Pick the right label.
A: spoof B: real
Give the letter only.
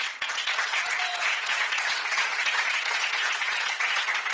A